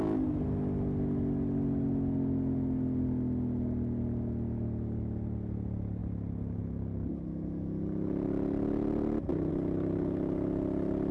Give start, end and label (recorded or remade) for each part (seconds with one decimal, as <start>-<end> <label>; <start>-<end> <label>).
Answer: 0.0-11.1 recorded